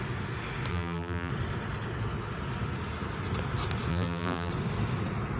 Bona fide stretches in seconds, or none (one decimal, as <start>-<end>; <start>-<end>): 0.0-0.7; 1.3-3.9; 4.5-5.4